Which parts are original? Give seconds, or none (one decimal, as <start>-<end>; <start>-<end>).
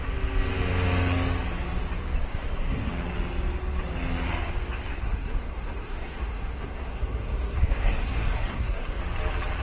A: 0.0-2.3; 2.9-4.9; 9.0-9.6